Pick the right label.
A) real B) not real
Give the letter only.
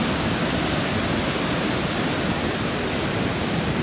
A